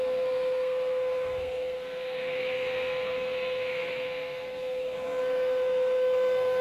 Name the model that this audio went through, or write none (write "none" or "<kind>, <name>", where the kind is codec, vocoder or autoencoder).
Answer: codec, SNAC